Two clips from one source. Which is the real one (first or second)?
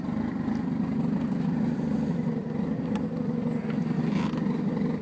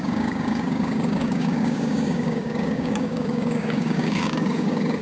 first